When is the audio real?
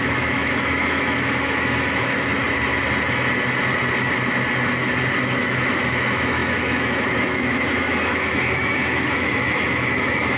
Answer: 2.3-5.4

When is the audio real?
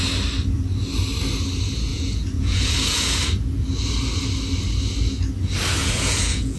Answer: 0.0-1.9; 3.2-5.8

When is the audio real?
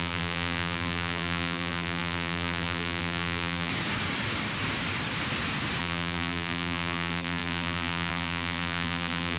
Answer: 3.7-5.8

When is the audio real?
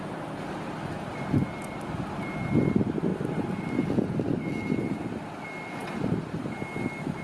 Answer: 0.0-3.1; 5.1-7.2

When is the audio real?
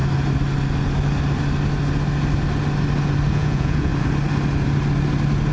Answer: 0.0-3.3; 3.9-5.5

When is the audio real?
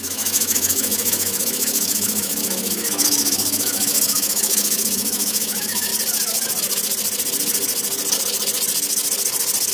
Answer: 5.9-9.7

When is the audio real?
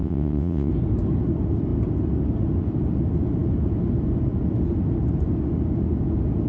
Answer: 0.7-6.5